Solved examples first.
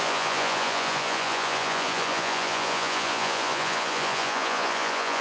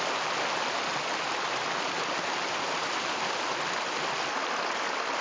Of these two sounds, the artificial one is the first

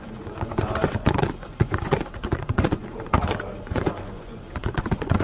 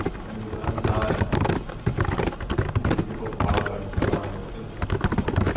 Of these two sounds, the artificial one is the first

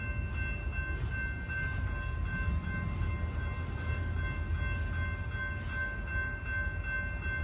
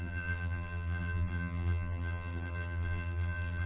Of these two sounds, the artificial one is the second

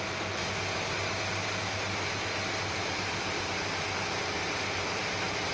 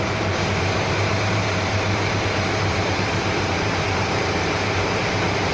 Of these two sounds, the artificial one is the second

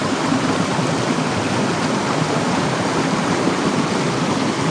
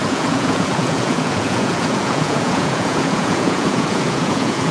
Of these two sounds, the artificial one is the second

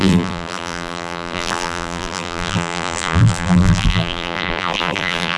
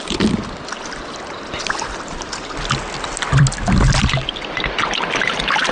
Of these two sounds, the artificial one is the first